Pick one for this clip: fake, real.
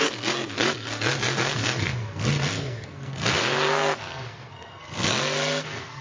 fake